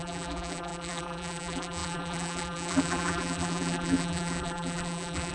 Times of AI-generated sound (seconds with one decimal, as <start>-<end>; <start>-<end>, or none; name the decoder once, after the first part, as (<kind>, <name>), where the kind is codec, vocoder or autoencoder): 0.0-5.3 (vocoder, BigVGAN v2)